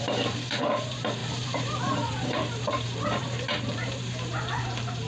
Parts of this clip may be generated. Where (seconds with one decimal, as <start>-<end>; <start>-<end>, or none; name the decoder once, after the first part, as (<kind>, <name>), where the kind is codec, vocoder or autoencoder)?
0.0-5.1 (vocoder, BigVGAN v2)

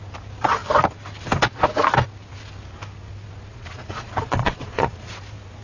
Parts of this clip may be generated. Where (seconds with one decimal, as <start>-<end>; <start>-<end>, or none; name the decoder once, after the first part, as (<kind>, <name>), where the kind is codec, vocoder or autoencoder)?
3.5-5.1 (vocoder, Vocos)

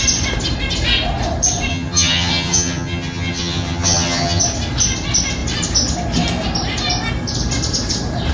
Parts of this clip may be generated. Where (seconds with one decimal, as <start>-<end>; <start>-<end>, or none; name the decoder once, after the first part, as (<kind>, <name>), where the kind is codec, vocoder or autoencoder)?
1.7-4.4 (vocoder, HiFi-GAN)